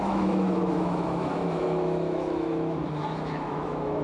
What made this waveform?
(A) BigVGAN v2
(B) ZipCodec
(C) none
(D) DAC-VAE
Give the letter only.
D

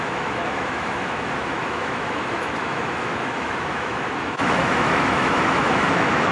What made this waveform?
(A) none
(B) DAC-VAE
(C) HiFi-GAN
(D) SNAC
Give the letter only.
B